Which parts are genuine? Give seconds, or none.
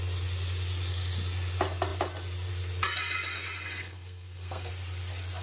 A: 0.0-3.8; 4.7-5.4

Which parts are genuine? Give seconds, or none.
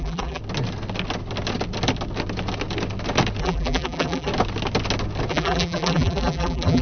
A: 0.4-3.4; 4.3-5.3